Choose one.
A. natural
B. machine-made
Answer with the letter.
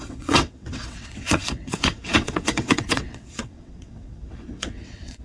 B